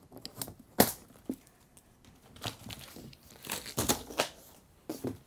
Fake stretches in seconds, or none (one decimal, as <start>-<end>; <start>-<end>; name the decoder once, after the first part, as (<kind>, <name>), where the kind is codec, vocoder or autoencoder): none